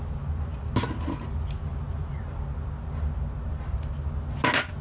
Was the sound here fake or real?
real